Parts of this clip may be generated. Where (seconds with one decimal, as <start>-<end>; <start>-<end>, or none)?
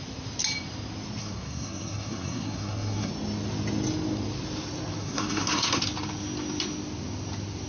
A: 1.2-3.1; 5.0-5.8